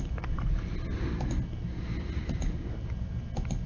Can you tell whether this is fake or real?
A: real